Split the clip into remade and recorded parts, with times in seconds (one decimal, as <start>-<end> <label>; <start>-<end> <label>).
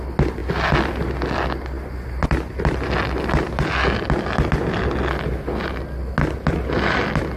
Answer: 0.0-7.4 recorded